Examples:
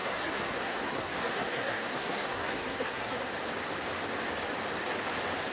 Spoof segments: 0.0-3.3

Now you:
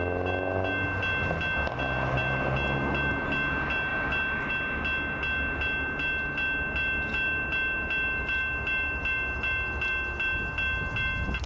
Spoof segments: none

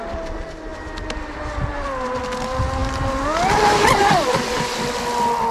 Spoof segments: none

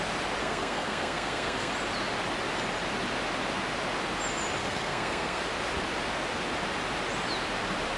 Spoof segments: 0.4-1.7; 4.6-5.4

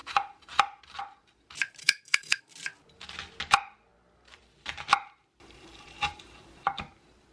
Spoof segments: 1.8-2.4